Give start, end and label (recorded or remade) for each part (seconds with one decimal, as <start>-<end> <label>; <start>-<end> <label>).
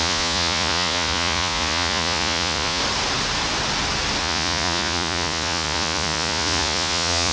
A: 0.0-2.8 remade; 2.8-4.2 recorded; 4.2-7.3 remade